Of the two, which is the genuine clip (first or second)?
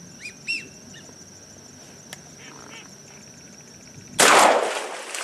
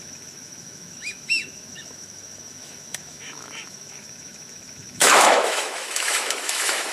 first